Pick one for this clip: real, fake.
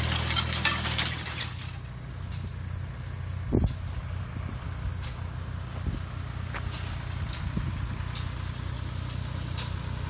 real